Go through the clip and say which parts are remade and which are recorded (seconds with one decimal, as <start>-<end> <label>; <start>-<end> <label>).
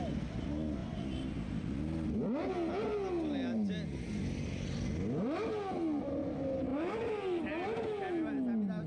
0.0-8.9 recorded